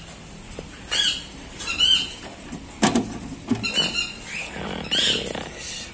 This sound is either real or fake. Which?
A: real